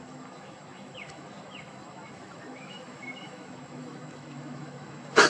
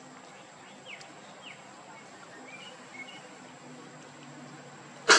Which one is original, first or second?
second